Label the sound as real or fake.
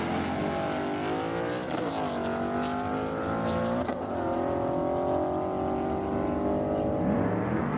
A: real